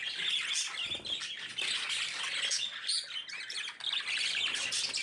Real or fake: real